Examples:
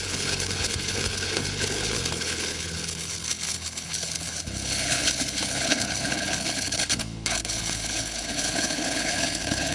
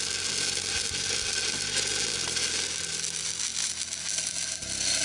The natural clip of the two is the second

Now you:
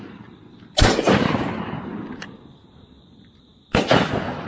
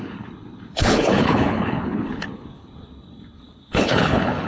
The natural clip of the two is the first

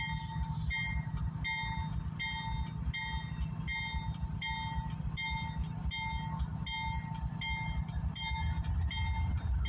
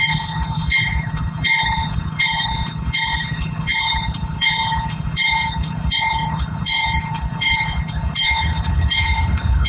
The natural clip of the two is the first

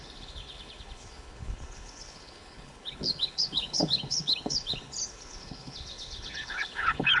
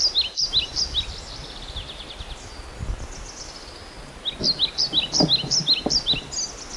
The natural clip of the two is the second